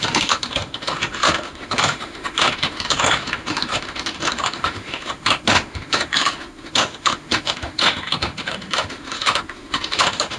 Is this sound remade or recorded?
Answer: remade